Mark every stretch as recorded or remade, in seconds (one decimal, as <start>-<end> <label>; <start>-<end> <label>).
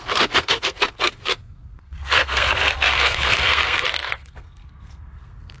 0.0-5.6 remade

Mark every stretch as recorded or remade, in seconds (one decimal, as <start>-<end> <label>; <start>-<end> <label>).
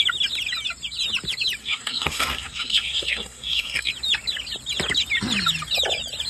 0.0-1.6 recorded; 1.6-3.9 remade; 3.9-6.3 recorded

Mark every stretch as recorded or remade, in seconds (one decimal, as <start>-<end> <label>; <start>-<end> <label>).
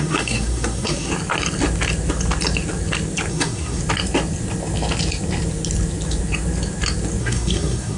0.0-1.1 remade; 1.1-3.3 recorded; 3.3-3.8 remade; 3.8-7.2 recorded; 7.2-8.0 remade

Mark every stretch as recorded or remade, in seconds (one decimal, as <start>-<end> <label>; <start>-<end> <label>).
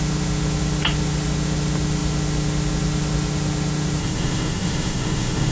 0.0-4.0 recorded; 4.0-5.5 remade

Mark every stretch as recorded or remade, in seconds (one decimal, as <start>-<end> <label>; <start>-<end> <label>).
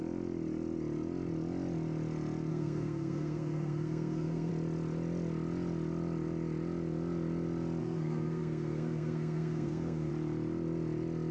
0.0-2.5 recorded; 2.5-4.5 remade; 4.5-7.8 recorded; 7.8-10.1 remade; 10.1-11.3 recorded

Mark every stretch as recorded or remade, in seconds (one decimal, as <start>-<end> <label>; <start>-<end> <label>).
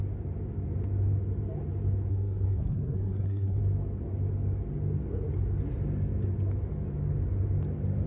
0.0-2.1 recorded; 2.1-3.6 remade; 3.6-8.1 recorded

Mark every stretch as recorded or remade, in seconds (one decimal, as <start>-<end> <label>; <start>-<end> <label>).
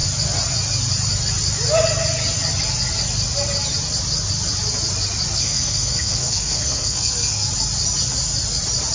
0.0-5.4 recorded; 5.4-7.5 remade; 7.5-8.9 recorded